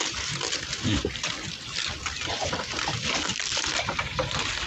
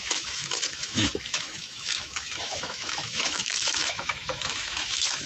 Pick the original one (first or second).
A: first